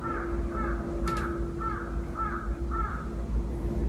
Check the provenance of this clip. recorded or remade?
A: recorded